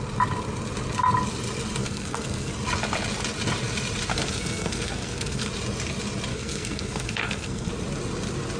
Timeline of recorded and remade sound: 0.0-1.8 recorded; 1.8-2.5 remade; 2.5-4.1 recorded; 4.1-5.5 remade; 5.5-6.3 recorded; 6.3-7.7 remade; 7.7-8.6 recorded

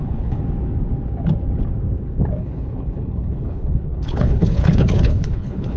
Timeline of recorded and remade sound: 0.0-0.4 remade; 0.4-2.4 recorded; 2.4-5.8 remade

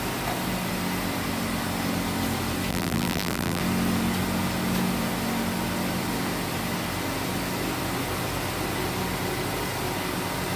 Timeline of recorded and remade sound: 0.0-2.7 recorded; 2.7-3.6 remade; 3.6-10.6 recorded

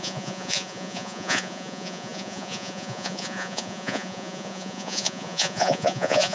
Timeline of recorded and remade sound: 0.0-6.3 remade

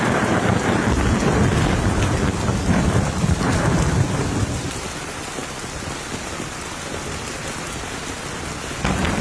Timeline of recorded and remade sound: 0.0-5.4 recorded; 5.4-7.3 remade; 7.3-9.2 recorded